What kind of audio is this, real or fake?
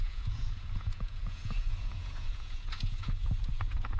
fake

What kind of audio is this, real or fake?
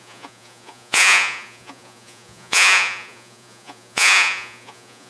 fake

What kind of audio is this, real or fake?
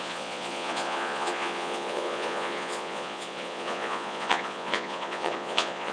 fake